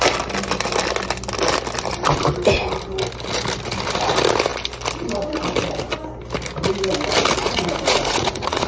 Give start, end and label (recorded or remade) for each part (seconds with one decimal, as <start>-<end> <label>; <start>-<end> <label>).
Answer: 0.0-7.4 recorded; 7.4-8.7 remade